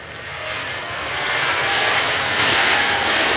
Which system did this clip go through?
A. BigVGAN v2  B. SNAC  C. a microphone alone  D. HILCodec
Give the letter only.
B